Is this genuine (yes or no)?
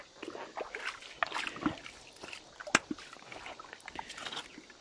yes